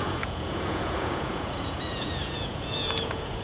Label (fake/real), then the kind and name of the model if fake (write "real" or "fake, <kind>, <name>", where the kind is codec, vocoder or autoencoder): fake, vocoder, Vocos